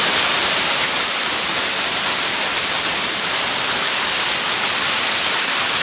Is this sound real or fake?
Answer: real